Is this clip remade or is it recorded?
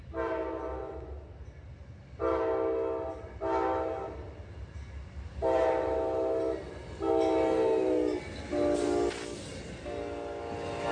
recorded